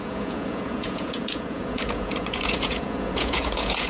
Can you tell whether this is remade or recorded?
remade